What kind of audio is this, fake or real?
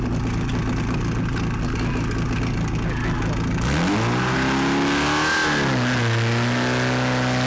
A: real